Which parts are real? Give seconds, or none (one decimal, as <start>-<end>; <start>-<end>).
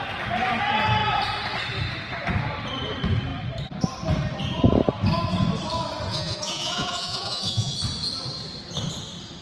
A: 0.0-6.1; 7.7-9.4